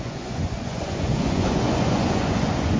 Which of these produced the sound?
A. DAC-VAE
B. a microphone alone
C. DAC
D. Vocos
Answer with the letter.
D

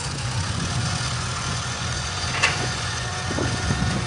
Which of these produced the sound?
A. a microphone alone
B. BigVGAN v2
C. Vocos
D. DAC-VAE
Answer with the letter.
C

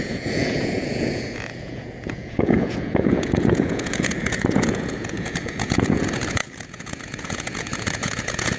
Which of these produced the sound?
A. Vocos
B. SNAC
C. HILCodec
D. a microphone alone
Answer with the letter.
A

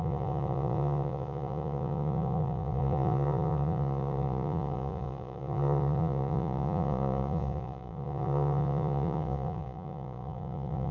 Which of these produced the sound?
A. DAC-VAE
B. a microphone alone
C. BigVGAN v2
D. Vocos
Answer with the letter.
D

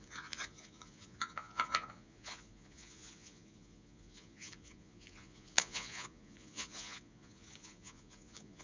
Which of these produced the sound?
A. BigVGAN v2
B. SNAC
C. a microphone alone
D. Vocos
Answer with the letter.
D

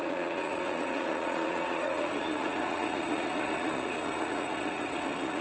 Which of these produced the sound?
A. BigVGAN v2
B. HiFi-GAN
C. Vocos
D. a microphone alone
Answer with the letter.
C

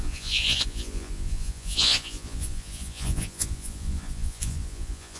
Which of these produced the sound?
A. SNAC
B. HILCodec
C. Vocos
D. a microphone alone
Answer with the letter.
C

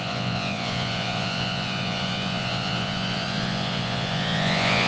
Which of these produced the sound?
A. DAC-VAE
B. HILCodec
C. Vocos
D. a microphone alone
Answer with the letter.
C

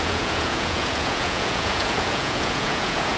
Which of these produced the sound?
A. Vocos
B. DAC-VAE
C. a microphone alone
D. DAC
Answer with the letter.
A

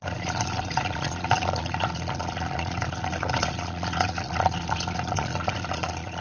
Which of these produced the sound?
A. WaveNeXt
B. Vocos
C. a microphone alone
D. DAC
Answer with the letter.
B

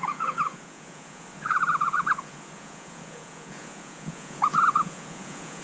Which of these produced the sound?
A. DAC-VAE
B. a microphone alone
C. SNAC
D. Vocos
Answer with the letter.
D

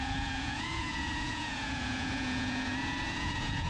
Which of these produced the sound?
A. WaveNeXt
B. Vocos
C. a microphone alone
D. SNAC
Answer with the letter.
B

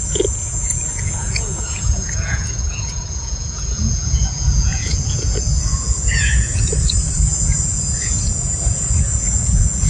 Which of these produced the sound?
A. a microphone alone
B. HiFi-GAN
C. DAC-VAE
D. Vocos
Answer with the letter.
D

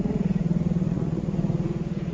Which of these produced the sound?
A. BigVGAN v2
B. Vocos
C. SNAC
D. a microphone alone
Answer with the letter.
B